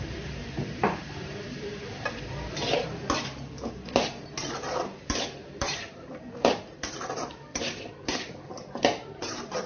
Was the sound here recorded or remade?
remade